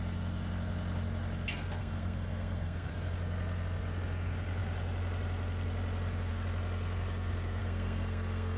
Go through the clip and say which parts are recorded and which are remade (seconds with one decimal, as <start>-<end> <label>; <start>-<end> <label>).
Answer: 0.0-1.8 recorded; 1.8-2.9 remade; 2.9-7.6 recorded; 7.6-8.6 remade